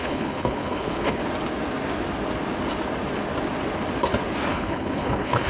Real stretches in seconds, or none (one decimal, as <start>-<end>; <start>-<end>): 1.2-4.5